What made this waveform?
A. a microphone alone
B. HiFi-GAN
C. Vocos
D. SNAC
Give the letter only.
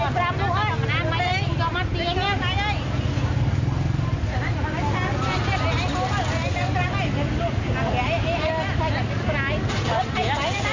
A